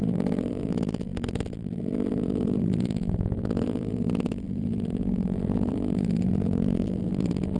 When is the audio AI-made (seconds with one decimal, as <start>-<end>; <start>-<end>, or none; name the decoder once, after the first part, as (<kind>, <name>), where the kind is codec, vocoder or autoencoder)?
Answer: 0.0-7.6 (vocoder, BigVGAN v2)